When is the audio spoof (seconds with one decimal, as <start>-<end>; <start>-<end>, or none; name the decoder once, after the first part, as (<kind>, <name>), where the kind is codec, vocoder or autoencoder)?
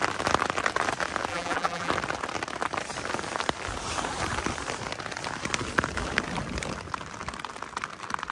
1.3-1.9 (vocoder, BigVGAN v2)